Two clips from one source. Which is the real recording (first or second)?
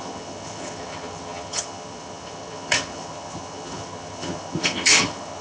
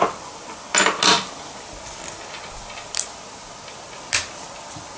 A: second